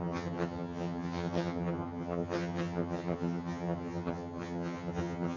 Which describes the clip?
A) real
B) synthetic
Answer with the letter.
B